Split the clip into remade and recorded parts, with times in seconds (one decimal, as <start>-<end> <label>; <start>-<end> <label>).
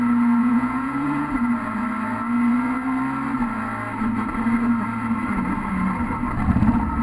0.0-0.4 recorded; 0.4-1.3 remade; 1.3-7.0 recorded